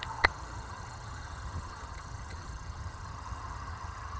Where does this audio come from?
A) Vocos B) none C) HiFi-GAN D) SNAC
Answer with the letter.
C